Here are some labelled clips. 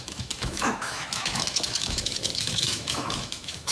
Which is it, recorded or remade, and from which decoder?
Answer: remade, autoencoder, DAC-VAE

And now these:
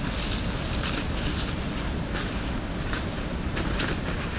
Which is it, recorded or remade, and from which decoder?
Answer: recorded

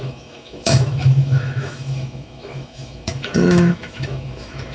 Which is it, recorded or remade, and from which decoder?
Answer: remade, autoencoder, DAC-VAE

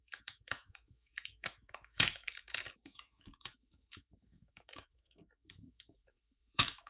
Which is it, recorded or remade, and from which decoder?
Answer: remade, autoencoder, DAC-VAE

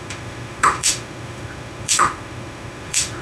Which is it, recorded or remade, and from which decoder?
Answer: remade, autoencoder, DAC-VAE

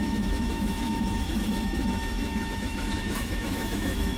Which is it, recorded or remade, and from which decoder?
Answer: remade, autoencoder, DAC-VAE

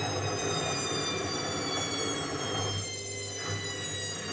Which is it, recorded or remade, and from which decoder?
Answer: recorded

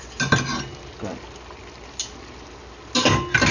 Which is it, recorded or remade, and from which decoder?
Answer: recorded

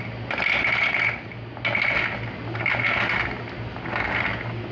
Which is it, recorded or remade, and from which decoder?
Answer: recorded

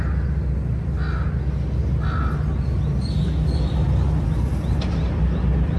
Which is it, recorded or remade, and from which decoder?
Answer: recorded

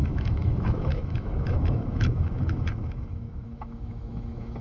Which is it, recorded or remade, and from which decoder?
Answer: remade, autoencoder, DAC-VAE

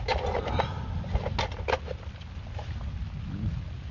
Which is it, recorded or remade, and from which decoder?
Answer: recorded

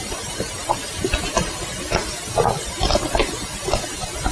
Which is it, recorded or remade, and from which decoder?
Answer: recorded